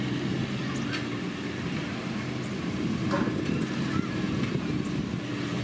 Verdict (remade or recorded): recorded